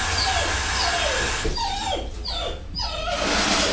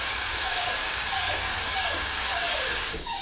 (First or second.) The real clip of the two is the first